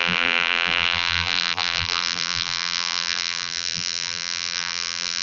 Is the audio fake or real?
fake